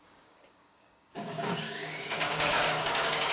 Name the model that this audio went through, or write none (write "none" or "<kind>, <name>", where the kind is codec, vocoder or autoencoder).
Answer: codec, DAC